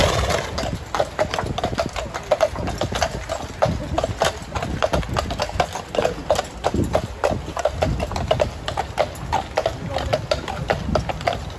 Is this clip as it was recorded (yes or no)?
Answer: yes